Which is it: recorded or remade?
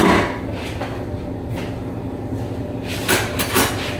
recorded